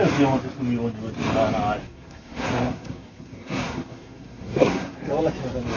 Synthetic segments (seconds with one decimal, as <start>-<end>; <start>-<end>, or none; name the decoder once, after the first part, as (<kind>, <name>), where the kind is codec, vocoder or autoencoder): 1.8-5.1 (codec, SNAC)